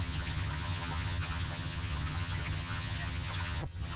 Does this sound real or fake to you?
fake